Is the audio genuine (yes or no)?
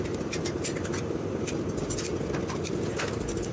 yes